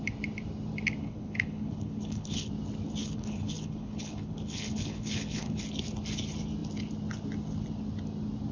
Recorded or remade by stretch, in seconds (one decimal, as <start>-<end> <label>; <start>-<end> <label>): 0.0-1.0 recorded; 1.0-2.5 remade; 2.5-3.0 recorded; 3.0-5.6 remade; 5.6-8.5 recorded